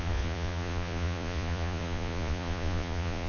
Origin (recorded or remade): remade